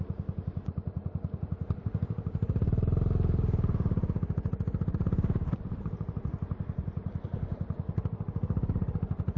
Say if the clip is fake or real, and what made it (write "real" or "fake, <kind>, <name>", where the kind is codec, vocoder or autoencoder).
fake, vocoder, BigVGAN v2